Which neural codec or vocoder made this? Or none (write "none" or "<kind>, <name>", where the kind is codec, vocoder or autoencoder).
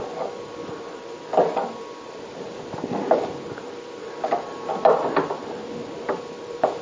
none